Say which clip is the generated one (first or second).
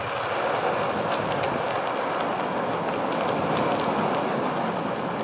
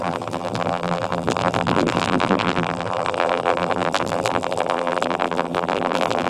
second